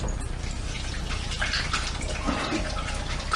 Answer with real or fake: real